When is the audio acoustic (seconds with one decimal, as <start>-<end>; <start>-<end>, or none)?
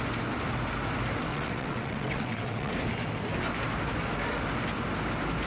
0.0-1.3; 2.7-5.5